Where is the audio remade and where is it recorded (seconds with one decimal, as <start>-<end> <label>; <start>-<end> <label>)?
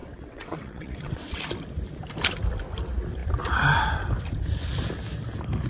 0.0-1.4 remade; 1.4-5.7 recorded